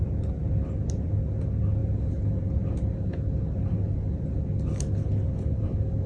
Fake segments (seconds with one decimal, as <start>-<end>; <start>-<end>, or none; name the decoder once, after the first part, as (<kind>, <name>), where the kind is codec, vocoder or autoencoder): none